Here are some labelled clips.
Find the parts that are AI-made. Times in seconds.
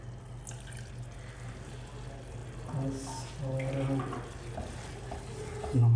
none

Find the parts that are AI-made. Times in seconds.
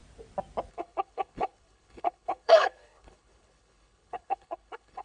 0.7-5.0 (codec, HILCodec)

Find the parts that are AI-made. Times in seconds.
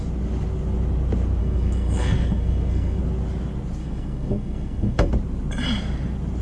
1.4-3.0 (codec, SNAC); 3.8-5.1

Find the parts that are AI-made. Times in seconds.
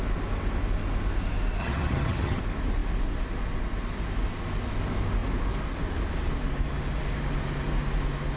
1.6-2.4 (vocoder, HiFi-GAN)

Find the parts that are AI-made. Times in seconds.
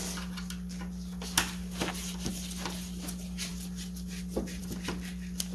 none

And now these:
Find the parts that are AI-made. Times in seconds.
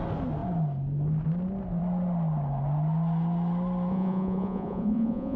3.9-5.4 (vocoder, Vocos)